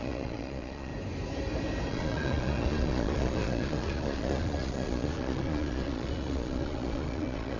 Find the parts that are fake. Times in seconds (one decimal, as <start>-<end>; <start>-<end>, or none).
0.0-0.9; 1.9-7.6